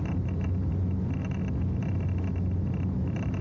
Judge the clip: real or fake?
real